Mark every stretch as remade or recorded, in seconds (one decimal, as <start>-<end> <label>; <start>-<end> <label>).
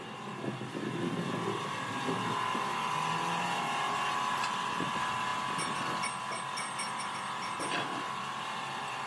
0.0-9.1 recorded